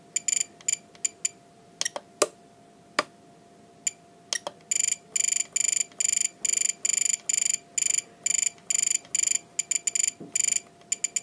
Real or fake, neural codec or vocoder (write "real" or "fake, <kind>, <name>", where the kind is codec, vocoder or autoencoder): real